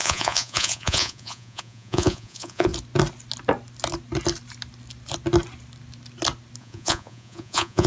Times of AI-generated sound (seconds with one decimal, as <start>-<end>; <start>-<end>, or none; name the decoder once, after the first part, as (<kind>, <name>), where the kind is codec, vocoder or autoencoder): 0.0-2.7 (vocoder, Vocos); 6.6-7.9